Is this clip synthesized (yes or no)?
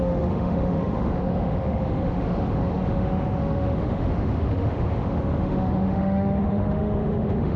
yes